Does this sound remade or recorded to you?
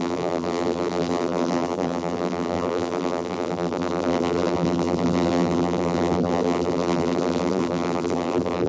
remade